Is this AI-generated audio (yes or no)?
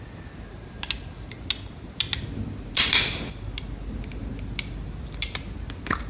no